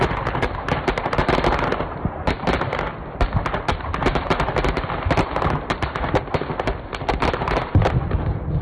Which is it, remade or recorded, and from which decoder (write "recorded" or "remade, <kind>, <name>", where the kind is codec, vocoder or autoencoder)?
recorded